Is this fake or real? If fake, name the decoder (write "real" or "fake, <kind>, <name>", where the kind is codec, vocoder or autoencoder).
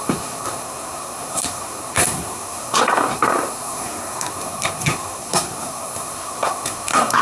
fake, codec, SNAC